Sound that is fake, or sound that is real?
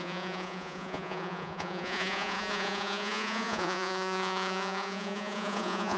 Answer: fake